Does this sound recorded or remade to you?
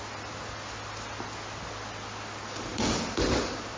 recorded